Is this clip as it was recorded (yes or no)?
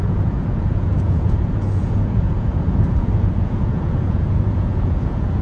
no